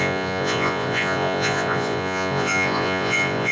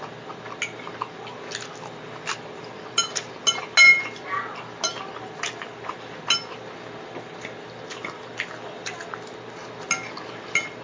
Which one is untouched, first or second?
second